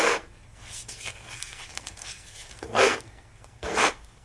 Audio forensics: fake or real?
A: fake